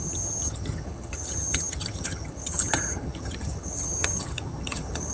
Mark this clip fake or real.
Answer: fake